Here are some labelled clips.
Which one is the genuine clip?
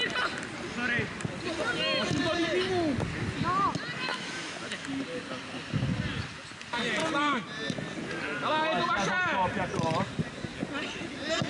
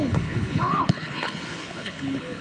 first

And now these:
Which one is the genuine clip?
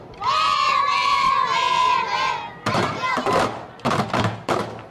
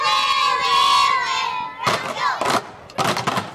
second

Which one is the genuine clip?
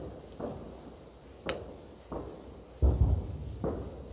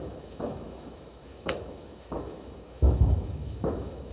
first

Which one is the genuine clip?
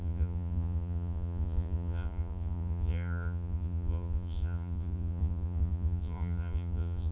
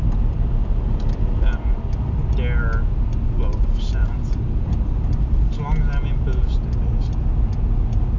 second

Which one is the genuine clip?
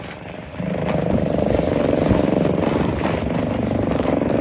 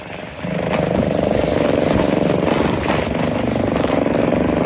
second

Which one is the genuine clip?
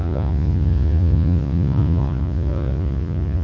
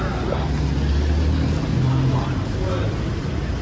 second